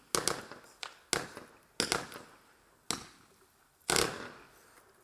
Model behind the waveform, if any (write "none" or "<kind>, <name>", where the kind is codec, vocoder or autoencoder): none